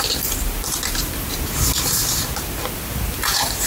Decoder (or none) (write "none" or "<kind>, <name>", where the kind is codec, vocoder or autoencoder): none